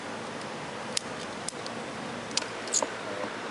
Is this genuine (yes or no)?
yes